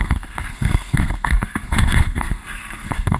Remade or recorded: remade